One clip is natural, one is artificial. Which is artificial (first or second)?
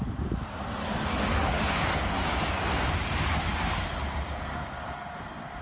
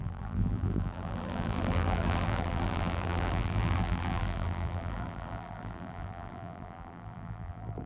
second